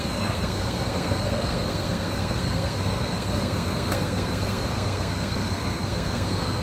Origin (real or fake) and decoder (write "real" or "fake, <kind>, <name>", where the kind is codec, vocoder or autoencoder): fake, codec, SNAC